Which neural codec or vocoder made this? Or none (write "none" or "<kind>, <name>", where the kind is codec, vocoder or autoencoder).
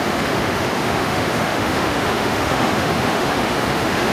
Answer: autoencoder, DAC-VAE